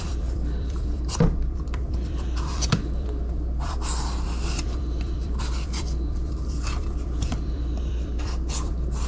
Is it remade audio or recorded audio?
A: remade